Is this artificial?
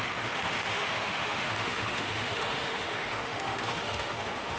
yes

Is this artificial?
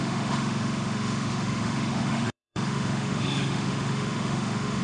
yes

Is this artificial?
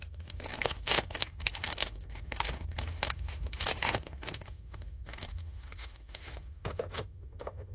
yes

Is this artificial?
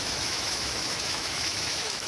yes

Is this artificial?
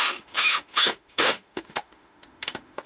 yes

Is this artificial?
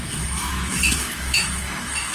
yes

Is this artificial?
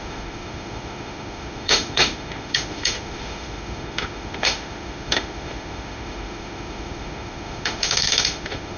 yes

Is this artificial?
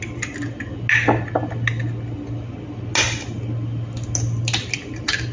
no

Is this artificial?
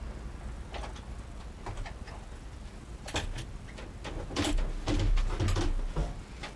no